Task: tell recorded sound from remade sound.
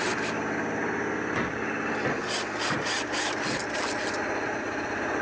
recorded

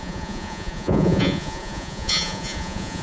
remade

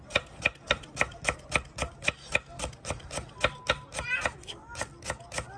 recorded